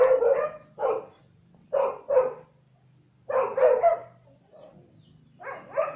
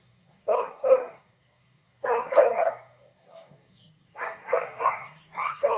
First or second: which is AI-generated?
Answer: second